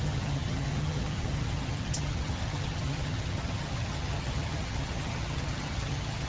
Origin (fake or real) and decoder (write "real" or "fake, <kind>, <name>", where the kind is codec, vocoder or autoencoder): fake, vocoder, HiFi-GAN